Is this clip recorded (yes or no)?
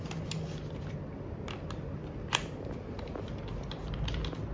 yes